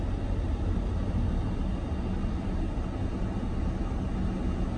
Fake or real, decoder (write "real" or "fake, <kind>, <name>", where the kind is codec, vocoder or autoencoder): real